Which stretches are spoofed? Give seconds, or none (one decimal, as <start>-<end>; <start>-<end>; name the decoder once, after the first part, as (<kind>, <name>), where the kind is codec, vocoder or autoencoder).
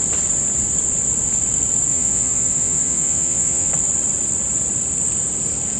1.9-3.7 (vocoder, Vocos)